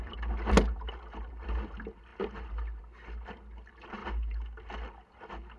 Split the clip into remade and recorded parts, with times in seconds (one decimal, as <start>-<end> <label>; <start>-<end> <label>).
0.0-5.6 recorded